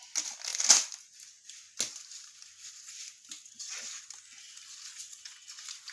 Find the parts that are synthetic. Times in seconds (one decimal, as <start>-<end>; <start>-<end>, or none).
4.9-5.5